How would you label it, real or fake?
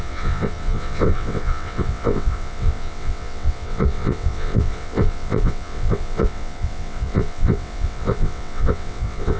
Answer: fake